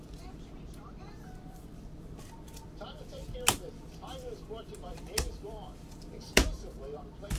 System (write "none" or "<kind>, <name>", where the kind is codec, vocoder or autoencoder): vocoder, BigVGAN v2